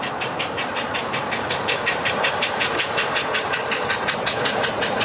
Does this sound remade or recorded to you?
remade